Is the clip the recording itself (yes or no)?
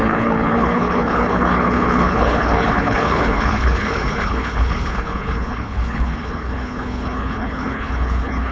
no